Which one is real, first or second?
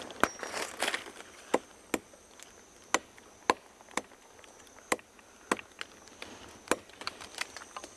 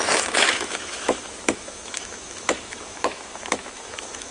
first